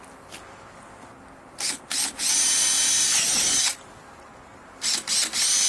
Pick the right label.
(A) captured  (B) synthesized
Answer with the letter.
A